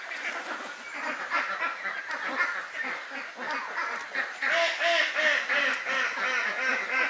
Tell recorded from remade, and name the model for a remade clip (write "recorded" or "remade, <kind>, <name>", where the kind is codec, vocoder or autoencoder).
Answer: recorded